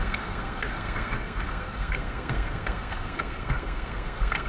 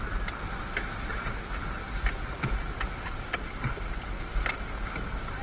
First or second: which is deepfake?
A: first